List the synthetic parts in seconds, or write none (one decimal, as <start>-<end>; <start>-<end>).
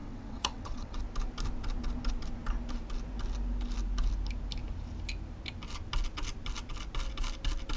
0.0-1.0